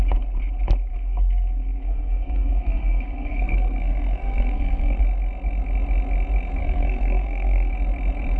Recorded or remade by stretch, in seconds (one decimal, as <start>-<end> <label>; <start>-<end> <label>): 0.0-0.9 recorded; 0.9-5.0 remade; 5.0-6.6 recorded; 6.6-7.7 remade; 7.7-8.4 recorded